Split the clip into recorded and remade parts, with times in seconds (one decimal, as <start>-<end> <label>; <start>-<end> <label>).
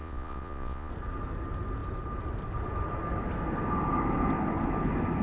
0.0-0.9 remade; 0.9-5.2 recorded